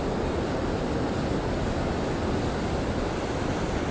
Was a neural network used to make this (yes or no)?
no